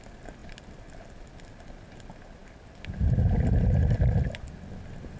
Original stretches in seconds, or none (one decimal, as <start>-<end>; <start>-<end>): 0.0-5.2